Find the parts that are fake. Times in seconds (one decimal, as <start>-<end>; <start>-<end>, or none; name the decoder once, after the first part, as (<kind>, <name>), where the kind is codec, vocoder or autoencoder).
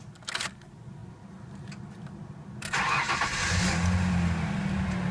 none